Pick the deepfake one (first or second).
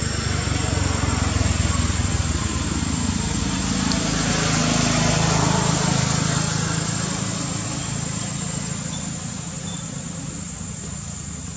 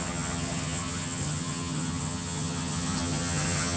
second